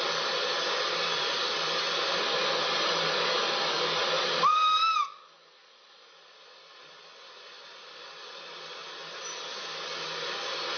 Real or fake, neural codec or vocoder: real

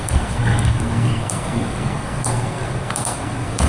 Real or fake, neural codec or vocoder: fake, codec, SNAC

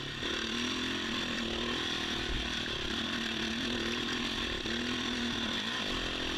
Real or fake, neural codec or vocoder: real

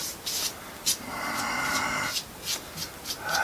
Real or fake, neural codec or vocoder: real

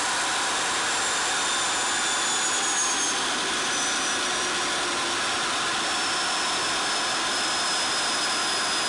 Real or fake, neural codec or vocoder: real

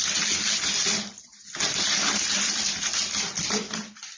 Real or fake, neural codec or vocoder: real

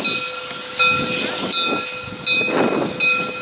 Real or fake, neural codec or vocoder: real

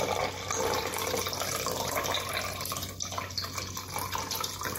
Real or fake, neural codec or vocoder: real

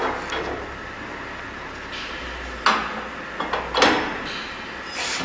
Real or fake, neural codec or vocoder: real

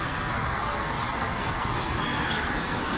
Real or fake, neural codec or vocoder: fake, codec, SNAC